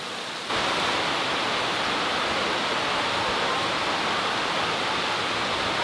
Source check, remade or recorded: recorded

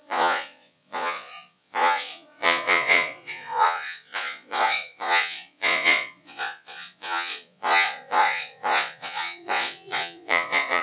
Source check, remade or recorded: remade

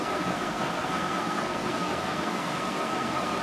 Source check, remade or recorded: remade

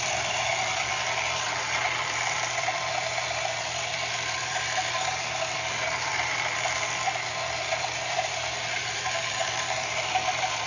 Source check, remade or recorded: remade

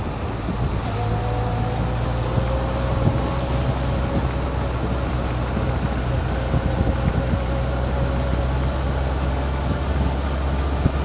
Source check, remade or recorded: recorded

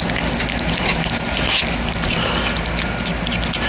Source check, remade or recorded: recorded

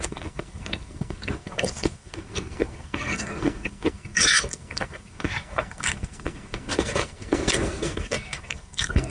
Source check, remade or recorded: remade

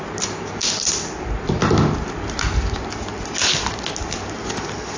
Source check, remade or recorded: recorded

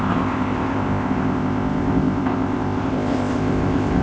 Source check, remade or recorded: remade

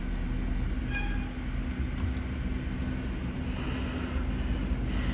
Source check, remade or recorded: recorded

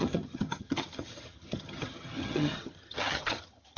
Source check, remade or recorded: remade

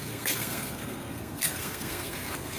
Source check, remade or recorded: remade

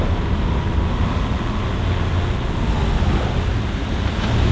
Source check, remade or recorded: recorded